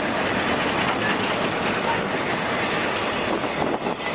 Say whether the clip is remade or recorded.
recorded